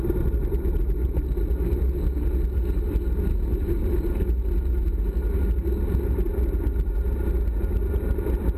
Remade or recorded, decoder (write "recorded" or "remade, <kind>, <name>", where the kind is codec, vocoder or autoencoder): recorded